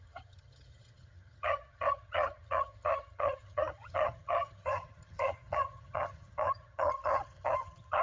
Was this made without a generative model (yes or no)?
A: no